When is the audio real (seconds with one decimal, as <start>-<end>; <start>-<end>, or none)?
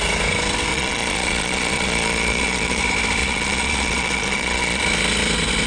0.0-0.7; 2.8-3.2; 4.8-5.7